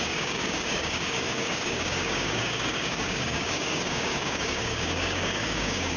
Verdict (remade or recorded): remade